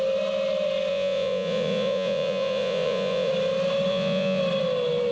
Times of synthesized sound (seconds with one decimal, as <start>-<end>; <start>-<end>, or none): 0.9-3.3; 3.9-4.4